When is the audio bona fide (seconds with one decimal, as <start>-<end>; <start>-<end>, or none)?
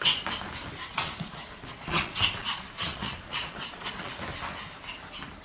0.0-0.9; 4.1-5.4